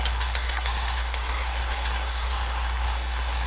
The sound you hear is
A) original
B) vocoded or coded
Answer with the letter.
B